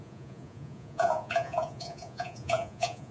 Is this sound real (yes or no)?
no